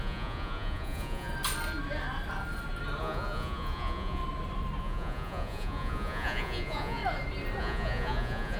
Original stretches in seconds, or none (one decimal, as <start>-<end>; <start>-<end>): 1.3-3.0; 4.2-4.8; 7.0-7.6